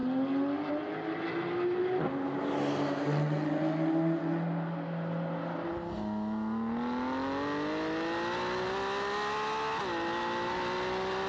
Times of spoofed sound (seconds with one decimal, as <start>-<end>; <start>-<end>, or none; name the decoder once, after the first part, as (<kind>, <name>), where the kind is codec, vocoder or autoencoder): none